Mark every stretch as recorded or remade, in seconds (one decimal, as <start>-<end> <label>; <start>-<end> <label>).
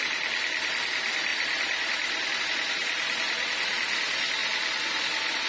0.0-1.3 recorded; 1.3-2.4 remade; 2.4-5.5 recorded